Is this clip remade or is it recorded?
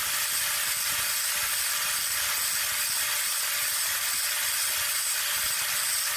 recorded